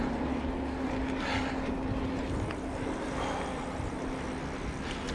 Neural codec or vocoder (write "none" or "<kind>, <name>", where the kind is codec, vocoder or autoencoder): none